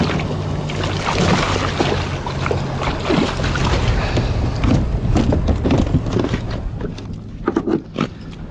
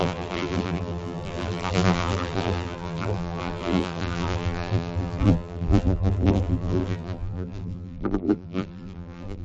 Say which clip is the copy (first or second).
second